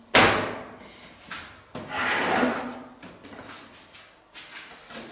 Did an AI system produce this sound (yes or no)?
no